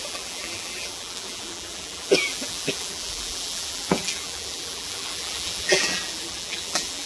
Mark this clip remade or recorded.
remade